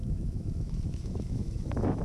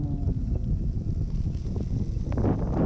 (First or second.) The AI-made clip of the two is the first